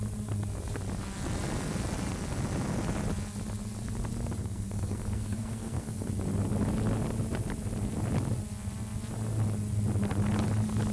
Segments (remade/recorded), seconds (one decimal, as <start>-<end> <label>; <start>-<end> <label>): 0.0-4.4 recorded; 4.4-6.1 remade; 6.1-10.9 recorded